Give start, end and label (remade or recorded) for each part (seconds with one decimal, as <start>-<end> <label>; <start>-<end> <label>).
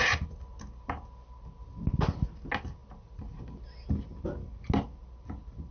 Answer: 0.0-5.7 recorded